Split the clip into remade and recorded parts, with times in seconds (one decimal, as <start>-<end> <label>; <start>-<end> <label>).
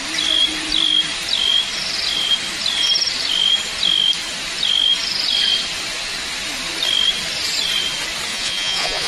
0.0-8.3 recorded; 8.3-9.1 remade